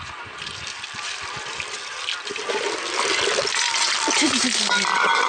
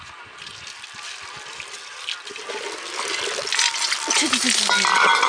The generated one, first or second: first